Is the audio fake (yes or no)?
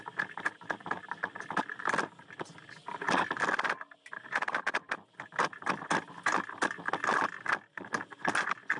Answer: no